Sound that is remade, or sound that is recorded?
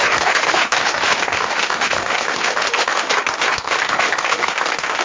remade